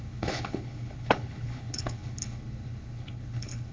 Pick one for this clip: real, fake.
fake